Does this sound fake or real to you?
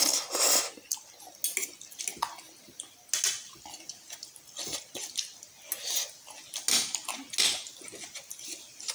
real